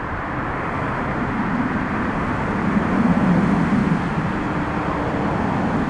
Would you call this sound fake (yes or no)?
no